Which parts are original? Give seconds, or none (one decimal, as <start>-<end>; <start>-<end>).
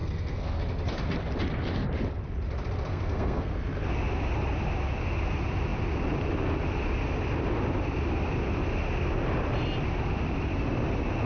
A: 0.6-2.9; 3.5-11.3